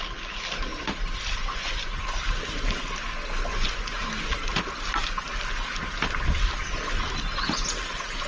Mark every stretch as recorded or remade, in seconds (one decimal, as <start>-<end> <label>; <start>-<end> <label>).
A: 0.0-1.4 recorded; 1.4-2.0 remade; 2.0-3.5 recorded; 3.5-4.3 remade; 4.3-8.3 recorded